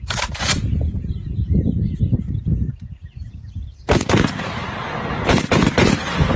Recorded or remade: remade